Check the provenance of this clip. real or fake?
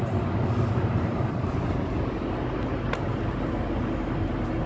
real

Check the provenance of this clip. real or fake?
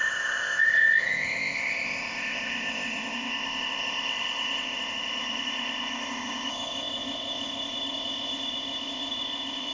fake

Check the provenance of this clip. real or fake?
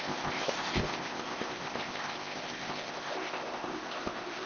fake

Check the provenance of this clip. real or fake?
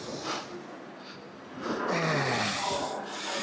real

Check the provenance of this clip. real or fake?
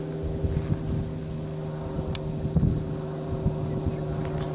real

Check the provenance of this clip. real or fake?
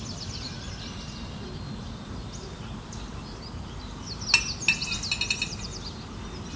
real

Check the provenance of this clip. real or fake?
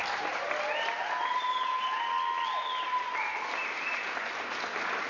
real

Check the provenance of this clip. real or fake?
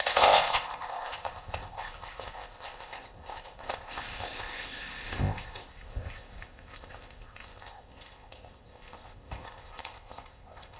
fake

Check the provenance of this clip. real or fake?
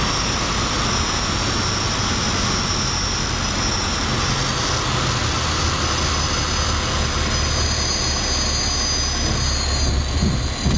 real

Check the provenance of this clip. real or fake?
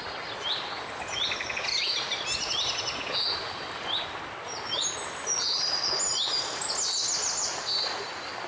real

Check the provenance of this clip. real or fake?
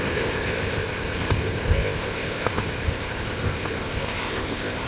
fake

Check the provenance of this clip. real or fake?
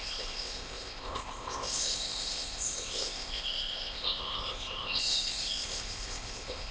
fake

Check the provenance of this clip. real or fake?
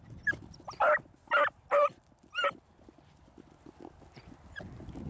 real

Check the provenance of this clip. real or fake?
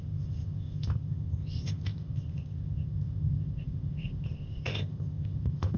fake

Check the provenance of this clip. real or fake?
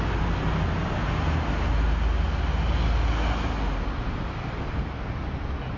real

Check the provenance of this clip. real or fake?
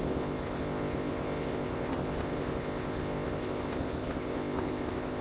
fake